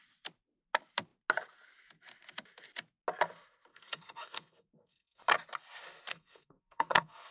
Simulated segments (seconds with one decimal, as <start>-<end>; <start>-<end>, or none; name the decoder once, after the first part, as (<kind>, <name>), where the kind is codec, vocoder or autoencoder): 3.7-5.2 (codec, SNAC); 6.1-7.3